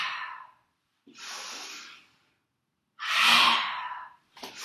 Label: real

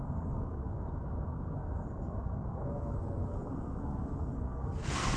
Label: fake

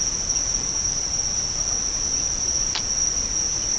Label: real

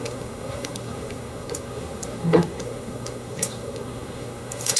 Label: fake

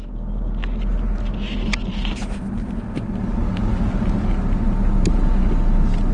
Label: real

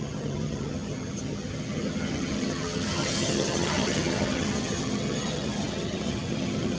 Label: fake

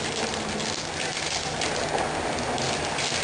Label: real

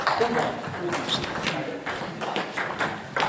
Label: real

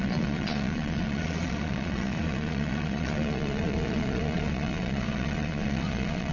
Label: fake